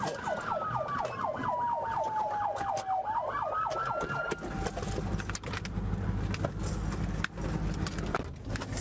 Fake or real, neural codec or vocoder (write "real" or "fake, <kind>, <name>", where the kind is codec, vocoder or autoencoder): real